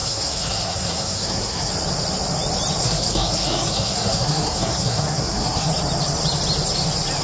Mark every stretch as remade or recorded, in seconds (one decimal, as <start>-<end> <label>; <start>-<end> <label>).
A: 0.0-1.7 remade; 1.7-2.8 recorded; 2.8-5.7 remade; 5.7-7.2 recorded